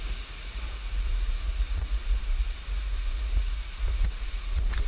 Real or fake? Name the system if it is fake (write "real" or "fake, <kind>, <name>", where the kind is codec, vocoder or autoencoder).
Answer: fake, vocoder, Vocos